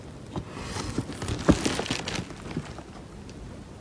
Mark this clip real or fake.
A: real